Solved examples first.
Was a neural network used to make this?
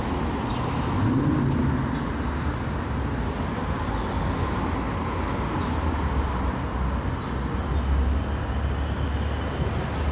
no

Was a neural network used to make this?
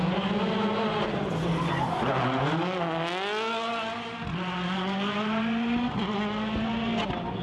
no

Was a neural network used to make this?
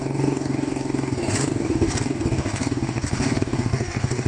yes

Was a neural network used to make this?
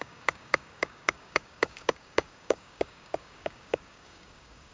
yes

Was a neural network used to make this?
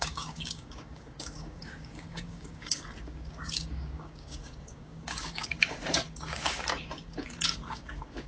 yes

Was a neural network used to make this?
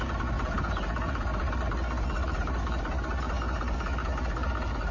no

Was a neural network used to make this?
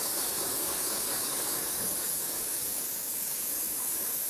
yes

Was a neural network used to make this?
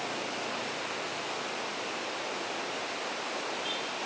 no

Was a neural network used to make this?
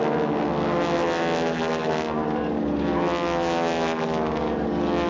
no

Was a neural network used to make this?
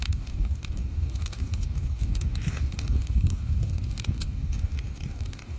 yes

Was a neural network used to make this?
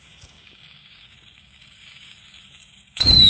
yes